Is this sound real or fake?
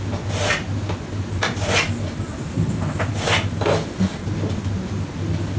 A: real